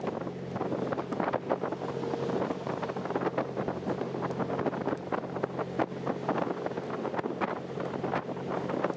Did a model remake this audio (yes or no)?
no